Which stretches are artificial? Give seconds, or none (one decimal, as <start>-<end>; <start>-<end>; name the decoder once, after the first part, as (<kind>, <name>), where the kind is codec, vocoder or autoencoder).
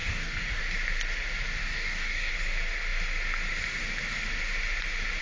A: 0.0-0.6 (codec, DAC); 1.6-2.3